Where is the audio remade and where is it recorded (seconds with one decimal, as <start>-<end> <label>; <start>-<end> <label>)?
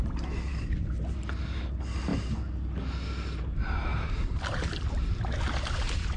0.0-0.5 recorded; 0.5-1.0 remade; 1.0-3.9 recorded; 3.9-6.2 remade